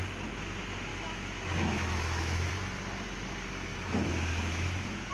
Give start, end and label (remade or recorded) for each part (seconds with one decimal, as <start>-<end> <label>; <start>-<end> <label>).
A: 0.0-0.9 recorded; 0.9-2.5 remade; 2.5-3.7 recorded; 3.7-5.1 remade